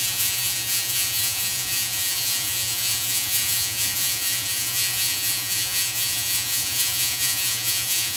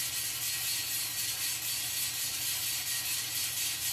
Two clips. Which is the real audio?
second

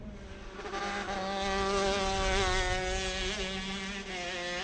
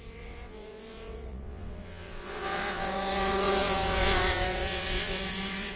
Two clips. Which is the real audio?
first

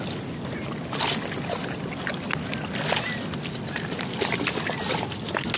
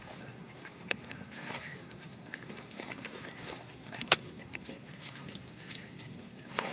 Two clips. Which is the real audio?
first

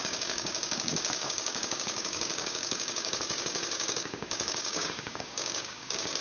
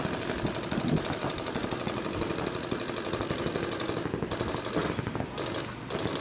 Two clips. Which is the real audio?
second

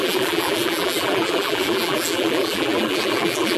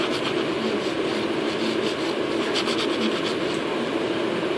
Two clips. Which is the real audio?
second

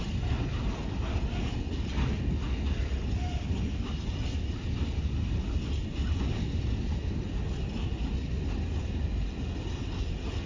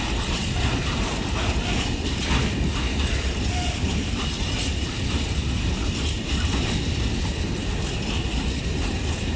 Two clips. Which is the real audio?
first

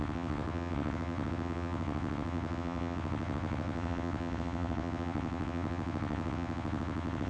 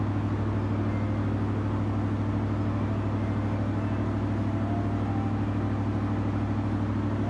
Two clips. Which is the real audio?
second